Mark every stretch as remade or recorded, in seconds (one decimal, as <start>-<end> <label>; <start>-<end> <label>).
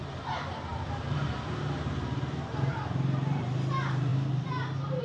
0.0-0.7 recorded; 0.7-1.6 remade; 1.6-5.0 recorded